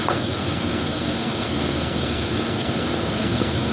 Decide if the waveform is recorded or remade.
remade